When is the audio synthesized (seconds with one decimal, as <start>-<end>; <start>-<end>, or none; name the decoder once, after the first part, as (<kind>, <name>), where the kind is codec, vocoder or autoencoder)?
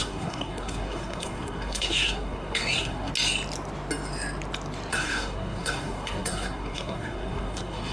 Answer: 0.0-3.1 (codec, SNAC); 4.9-7.9